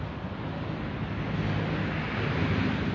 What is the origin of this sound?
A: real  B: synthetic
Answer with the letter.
A